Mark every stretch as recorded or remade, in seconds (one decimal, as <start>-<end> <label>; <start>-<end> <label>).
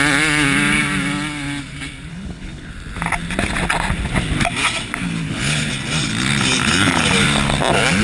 0.0-2.1 recorded; 2.1-2.7 remade; 2.7-5.2 recorded; 5.2-5.7 remade; 5.7-8.0 recorded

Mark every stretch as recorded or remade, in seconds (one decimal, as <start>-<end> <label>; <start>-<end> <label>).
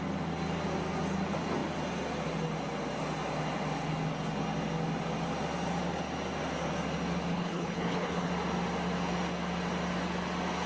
0.0-7.3 recorded; 7.3-8.3 remade; 8.3-10.7 recorded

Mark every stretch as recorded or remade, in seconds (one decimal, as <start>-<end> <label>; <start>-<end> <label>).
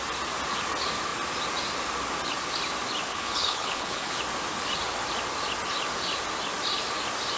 0.0-3.1 recorded; 3.1-4.2 remade; 4.2-7.4 recorded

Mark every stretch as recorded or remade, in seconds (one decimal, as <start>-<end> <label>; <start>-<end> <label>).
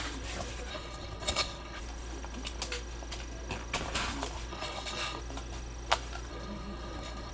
0.0-0.7 recorded; 0.7-1.8 remade; 1.8-4.5 recorded; 4.5-5.2 remade; 5.2-6.3 recorded; 6.3-7.3 remade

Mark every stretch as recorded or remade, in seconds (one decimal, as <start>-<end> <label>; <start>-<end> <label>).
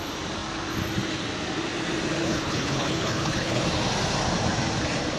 0.0-2.2 recorded; 2.2-3.6 remade; 3.6-5.2 recorded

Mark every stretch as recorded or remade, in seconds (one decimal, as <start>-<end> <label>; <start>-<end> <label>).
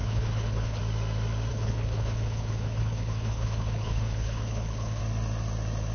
0.0-0.8 remade; 0.8-1.5 recorded; 1.5-5.0 remade; 5.0-5.9 recorded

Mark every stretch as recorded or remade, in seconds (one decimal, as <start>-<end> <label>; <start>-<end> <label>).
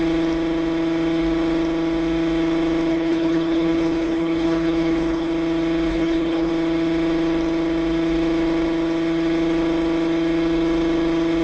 0.0-2.9 recorded; 2.9-5.3 remade; 5.3-5.9 recorded; 5.9-6.5 remade; 6.5-11.4 recorded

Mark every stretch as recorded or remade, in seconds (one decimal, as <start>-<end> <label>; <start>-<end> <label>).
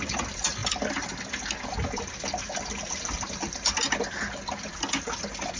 0.0-5.6 recorded